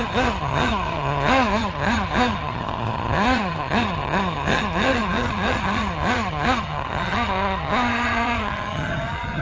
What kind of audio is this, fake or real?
fake